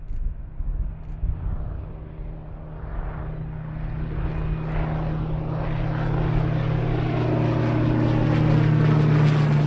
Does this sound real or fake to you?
real